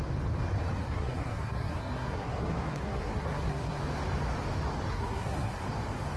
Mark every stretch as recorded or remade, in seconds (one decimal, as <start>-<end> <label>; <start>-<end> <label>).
0.0-0.8 recorded; 0.8-3.8 remade; 3.8-4.9 recorded; 4.9-5.6 remade; 5.6-6.2 recorded